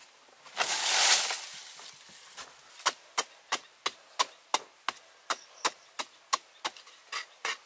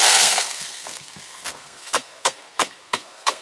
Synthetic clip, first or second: second